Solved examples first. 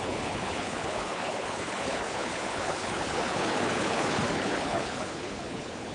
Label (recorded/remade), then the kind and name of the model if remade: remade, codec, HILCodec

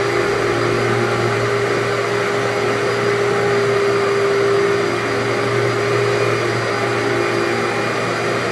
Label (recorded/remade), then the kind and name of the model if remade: recorded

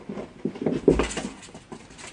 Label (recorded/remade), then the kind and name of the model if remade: recorded